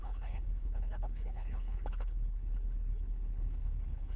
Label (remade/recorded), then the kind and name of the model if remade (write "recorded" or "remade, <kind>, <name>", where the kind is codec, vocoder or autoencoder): remade, codec, HILCodec